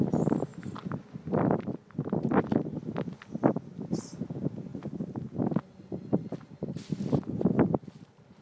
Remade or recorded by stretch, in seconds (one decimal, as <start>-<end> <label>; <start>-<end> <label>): 0.0-8.4 recorded